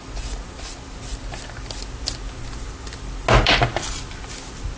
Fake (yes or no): no